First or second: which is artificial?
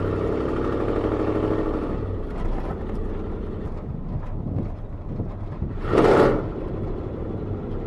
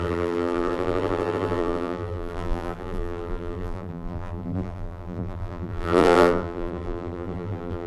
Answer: second